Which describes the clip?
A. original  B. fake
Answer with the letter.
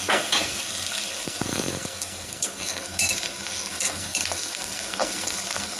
B